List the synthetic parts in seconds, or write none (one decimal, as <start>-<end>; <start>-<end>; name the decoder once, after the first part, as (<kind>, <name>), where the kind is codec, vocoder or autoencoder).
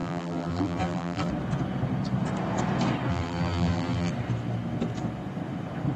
0.0-1.3 (vocoder, BigVGAN v2); 3.1-4.1